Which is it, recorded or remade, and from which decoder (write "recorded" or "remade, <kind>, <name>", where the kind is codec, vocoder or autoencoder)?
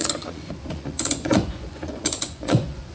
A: remade, vocoder, Vocos